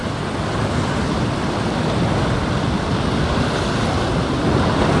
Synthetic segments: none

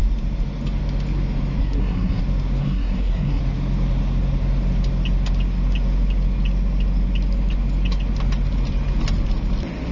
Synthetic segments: 1.6-2.2 (codec, SNAC); 2.6-3.4

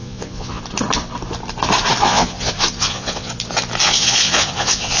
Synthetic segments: 0.0-0.6 (vocoder, Vocos); 2.0-3.3; 3.8-5.0